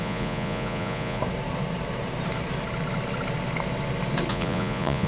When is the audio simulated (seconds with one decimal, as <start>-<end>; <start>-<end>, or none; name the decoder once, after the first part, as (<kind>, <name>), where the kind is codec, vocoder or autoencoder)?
0.0-1.2 (vocoder, Vocos); 4.3-5.1